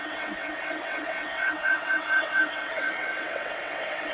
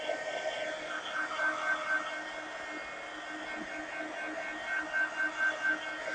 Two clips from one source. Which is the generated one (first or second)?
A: first